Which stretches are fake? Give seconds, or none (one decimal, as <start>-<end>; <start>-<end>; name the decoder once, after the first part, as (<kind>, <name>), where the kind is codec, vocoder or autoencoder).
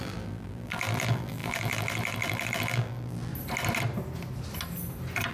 0.0-3.3 (vocoder, BigVGAN v2)